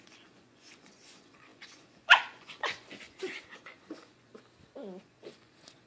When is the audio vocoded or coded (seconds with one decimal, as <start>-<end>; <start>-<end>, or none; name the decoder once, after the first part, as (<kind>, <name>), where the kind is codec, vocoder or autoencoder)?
0.0-4.3 (vocoder, Vocos); 5.0-5.9